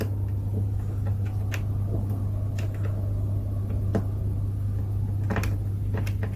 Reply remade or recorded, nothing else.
recorded